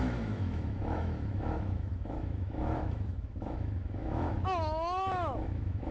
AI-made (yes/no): yes